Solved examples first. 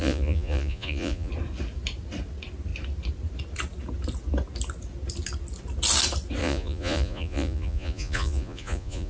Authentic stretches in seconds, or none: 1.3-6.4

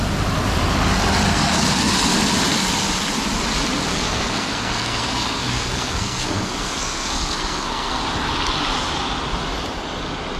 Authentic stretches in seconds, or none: 0.0-1.3; 1.9-3.9; 8.0-10.4

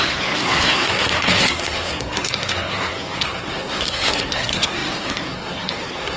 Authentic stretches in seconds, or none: none

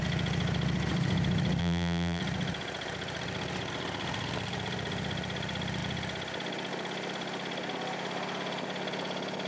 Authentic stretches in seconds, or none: 0.0-1.6; 2.2-9.5

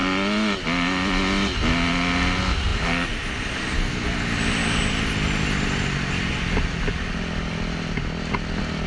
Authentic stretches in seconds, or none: 0.0-8.9